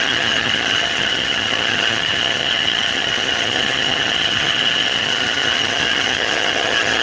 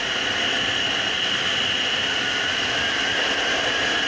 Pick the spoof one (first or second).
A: first